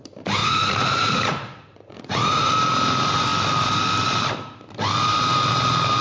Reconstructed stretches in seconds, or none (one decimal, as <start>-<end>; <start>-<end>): 0.4-2.5